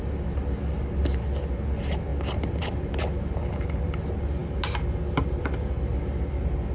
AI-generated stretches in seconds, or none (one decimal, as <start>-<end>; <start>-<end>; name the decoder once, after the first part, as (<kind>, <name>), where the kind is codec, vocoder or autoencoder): 2.1-3.0 (vocoder, BigVGAN v2)